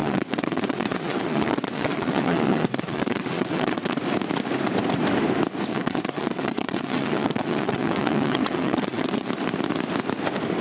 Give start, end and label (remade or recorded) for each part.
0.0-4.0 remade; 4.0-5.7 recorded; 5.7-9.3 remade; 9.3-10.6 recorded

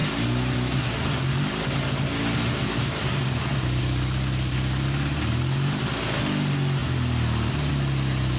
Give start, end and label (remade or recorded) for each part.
0.0-8.4 recorded

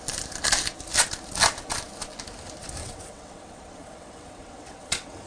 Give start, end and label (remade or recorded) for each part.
0.0-2.8 recorded; 2.8-5.3 remade

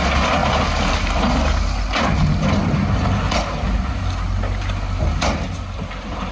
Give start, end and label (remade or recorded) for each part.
0.0-6.3 recorded

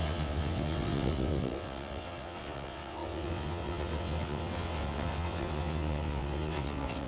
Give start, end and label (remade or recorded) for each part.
0.0-7.1 remade

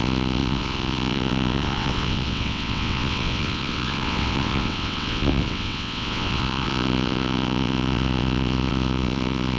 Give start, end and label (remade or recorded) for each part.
0.0-9.6 remade